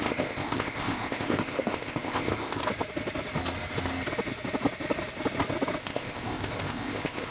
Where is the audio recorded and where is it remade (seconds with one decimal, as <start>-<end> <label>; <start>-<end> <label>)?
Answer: 0.0-2.6 remade; 2.6-5.8 recorded; 5.8-7.3 remade